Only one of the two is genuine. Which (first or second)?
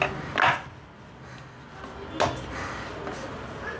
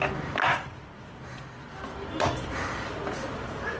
first